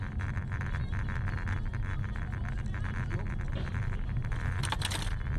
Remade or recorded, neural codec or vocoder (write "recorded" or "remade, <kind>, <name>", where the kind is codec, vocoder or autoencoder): recorded